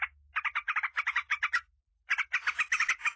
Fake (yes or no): no